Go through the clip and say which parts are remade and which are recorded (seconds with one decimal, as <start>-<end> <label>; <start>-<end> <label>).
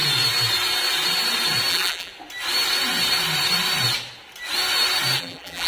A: 0.0-1.7 recorded; 1.7-2.1 remade; 2.1-5.2 recorded; 5.2-5.7 remade